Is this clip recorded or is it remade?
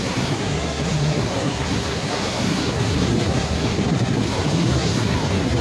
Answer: remade